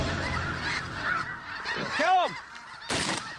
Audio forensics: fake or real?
fake